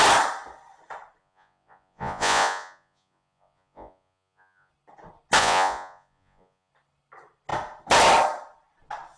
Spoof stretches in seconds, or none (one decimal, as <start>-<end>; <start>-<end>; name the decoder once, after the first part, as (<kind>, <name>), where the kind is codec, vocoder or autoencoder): 1.2-4.7 (vocoder, Vocos); 5.4-6.7